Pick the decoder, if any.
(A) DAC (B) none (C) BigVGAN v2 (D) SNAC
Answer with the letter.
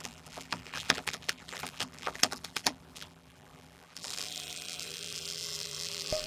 C